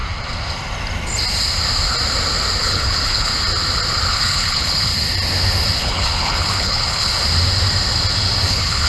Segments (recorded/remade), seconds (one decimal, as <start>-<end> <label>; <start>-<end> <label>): 0.0-2.6 recorded; 2.6-3.3 remade; 3.3-4.1 recorded; 4.1-4.9 remade; 4.9-5.8 recorded; 5.8-7.1 remade; 7.1-8.5 recorded; 8.5-8.9 remade